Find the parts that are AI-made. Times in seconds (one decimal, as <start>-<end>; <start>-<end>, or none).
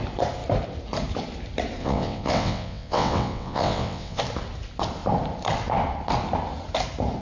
1.8-4.2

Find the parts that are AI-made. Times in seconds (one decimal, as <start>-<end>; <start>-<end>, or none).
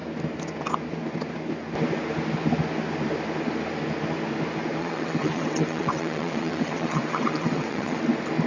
4.8-8.0